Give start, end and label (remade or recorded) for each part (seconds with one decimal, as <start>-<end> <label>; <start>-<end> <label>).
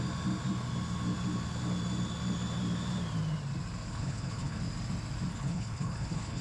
0.0-3.9 recorded; 3.9-4.6 remade; 4.6-5.3 recorded; 5.3-6.4 remade